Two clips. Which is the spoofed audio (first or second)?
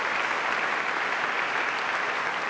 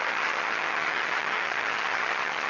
second